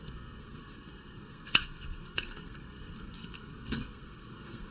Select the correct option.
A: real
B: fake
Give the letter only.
B